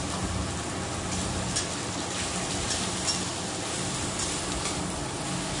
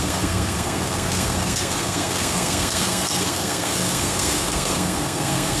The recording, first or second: first